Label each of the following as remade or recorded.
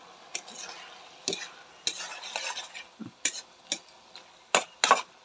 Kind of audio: recorded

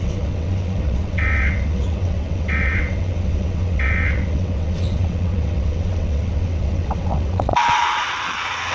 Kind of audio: remade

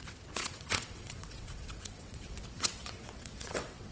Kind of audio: remade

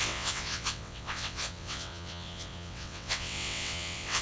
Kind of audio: remade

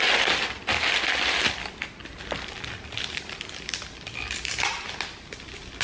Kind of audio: recorded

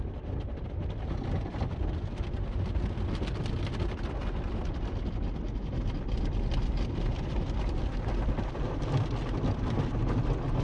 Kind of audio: recorded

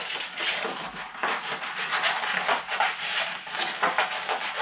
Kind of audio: recorded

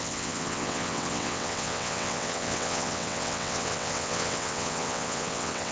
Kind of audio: remade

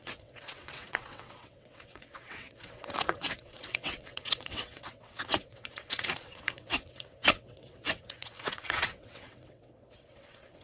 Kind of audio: remade